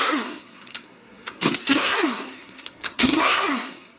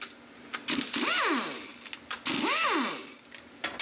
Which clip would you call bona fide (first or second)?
second